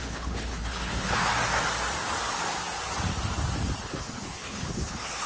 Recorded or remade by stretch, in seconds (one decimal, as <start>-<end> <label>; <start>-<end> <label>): 0.0-1.3 remade; 1.3-3.8 recorded; 3.8-5.3 remade